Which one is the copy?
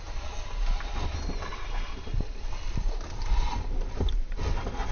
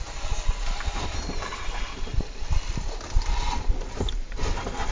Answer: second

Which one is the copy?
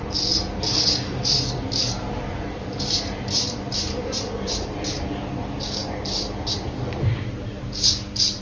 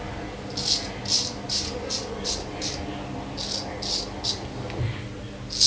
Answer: first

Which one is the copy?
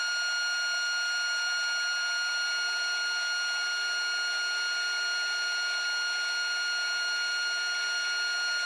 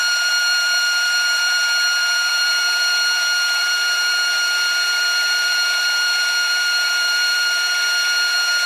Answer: second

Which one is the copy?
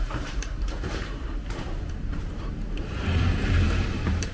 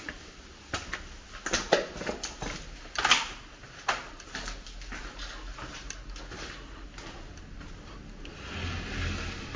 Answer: first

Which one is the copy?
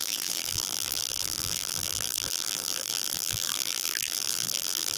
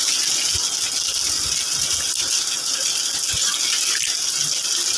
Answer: first